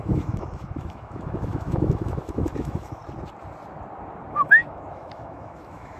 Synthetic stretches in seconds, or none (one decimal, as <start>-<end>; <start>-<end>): 0.0-3.0; 4.3-6.0